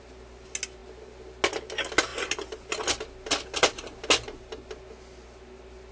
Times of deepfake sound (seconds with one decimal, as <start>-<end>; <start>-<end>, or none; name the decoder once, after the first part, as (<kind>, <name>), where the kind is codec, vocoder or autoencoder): none